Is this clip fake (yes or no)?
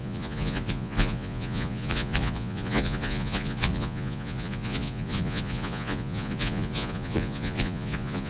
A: yes